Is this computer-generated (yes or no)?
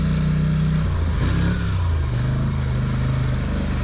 no